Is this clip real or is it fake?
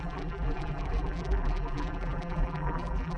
fake